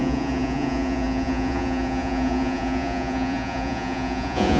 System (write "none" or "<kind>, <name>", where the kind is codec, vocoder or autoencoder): vocoder, Vocos